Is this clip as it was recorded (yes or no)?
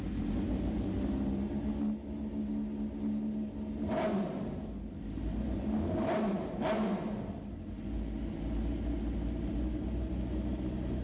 yes